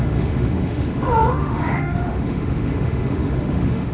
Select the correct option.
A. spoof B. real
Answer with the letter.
A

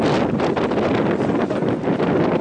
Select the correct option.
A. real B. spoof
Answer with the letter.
A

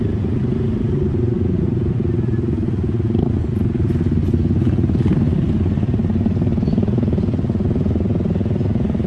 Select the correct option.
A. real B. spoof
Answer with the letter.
A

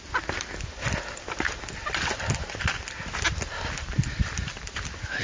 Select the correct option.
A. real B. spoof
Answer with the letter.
A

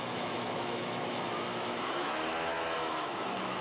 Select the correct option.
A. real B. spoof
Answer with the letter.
B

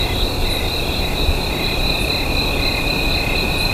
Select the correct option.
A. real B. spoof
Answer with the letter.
A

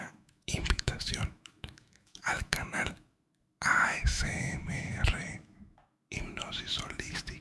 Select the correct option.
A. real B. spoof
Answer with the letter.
B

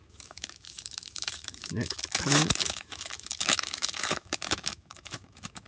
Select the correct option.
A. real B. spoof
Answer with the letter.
B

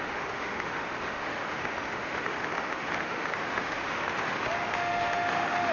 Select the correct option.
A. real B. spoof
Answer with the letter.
B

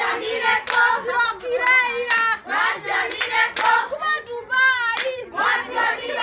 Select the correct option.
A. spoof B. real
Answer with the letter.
B